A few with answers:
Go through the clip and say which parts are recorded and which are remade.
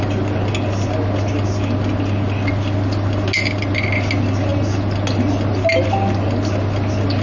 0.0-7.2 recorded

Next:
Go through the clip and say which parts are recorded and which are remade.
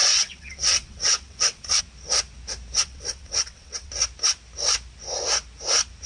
0.0-1.8 remade; 1.8-2.8 recorded; 2.8-3.9 remade; 3.9-6.1 recorded